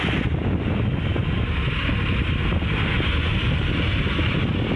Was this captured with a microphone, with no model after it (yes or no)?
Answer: yes